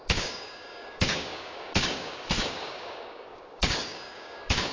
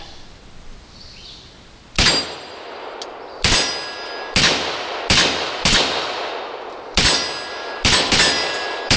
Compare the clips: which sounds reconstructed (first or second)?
first